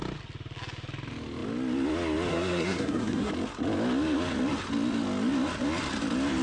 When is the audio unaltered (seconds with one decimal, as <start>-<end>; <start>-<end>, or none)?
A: 0.0-2.3; 3.3-6.4